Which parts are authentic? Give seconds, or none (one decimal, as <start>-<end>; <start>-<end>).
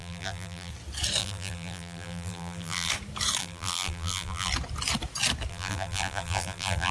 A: 0.7-1.2; 2.9-3.4; 4.5-5.5